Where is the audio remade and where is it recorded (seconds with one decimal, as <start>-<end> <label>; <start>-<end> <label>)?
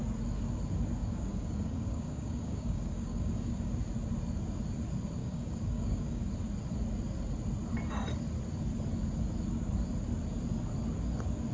0.0-1.0 recorded; 1.0-3.7 remade; 3.7-5.2 recorded; 5.2-6.3 remade; 6.3-11.5 recorded